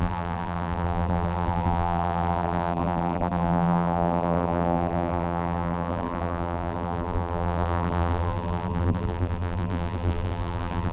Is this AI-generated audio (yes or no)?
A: yes